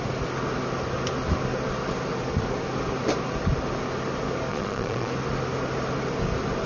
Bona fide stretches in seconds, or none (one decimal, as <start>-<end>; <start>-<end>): 0.0-4.5; 5.1-6.7